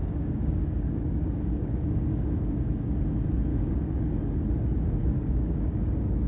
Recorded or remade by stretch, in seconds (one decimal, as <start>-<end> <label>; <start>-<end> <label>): 0.0-3.0 remade; 3.0-3.5 recorded; 3.5-4.2 remade; 4.2-5.0 recorded; 5.0-6.3 remade